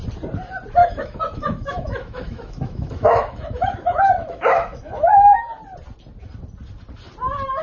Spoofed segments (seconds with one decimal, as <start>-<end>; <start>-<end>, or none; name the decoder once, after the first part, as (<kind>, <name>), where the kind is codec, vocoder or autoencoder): 0.8-5.4 (autoencoder, DAC-VAE)